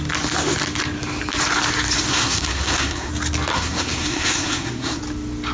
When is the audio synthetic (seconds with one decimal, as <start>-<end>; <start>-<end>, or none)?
2.1-3.1; 3.5-5.0

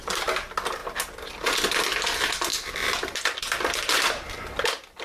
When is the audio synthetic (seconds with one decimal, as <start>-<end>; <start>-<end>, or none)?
0.8-1.3; 2.5-3.4

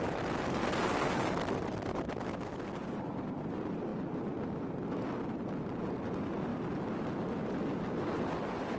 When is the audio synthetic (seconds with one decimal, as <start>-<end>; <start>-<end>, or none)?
2.8-3.5

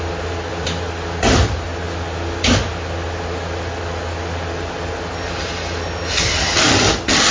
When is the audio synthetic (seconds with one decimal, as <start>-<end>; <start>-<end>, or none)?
none

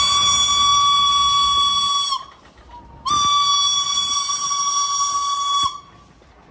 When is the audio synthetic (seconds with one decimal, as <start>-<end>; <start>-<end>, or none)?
none

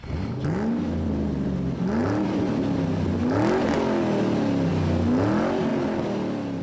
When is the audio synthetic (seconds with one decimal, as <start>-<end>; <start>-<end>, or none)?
none

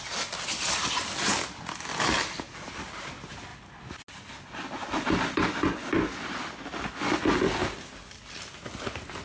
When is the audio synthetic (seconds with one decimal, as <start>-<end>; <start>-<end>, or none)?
none

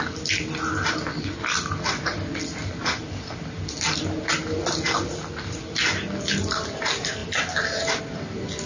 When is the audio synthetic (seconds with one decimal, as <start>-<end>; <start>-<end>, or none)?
none